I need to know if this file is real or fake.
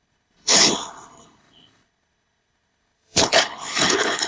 fake